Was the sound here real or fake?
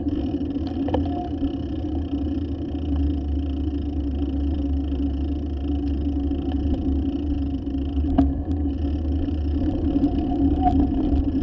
real